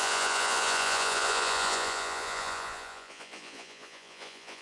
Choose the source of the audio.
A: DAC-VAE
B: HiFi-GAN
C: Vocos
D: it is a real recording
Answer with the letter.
C